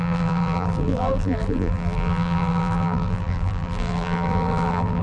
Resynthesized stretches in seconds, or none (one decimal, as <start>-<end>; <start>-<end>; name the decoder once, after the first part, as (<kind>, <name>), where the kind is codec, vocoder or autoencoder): 0.0-5.0 (vocoder, BigVGAN v2)